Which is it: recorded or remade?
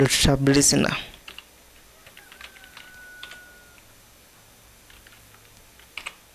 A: recorded